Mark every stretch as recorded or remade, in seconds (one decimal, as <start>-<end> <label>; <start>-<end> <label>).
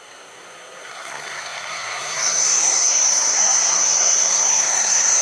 0.0-5.2 remade